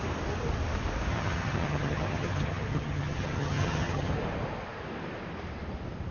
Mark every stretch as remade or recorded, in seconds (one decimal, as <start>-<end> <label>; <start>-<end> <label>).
0.0-1.1 recorded; 1.1-4.1 remade; 4.1-6.1 recorded